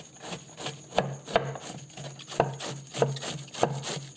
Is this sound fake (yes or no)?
no